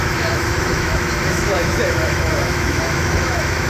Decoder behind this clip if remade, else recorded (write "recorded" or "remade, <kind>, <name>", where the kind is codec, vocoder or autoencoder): remade, autoencoder, DAC-VAE